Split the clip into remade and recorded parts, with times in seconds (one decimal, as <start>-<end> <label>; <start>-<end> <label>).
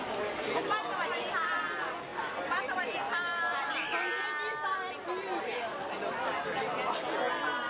0.0-7.7 recorded